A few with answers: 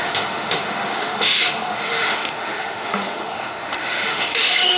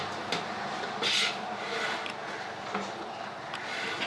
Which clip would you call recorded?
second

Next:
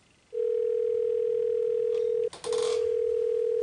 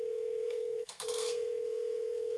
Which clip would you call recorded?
first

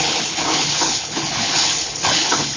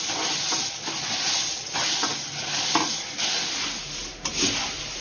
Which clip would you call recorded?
second